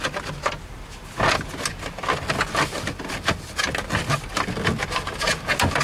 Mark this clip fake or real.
real